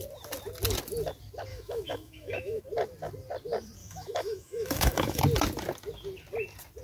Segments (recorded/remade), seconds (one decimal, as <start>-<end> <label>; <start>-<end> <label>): 0.0-1.5 recorded; 1.5-2.6 remade; 2.6-3.8 recorded; 3.8-5.2 remade; 5.2-6.8 recorded